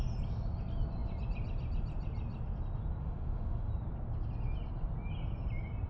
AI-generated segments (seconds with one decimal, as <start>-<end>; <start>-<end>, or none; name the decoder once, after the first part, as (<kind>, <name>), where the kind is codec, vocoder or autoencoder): 3.0-3.7 (autoencoder, DAC-VAE)